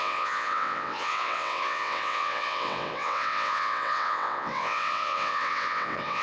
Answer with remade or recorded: remade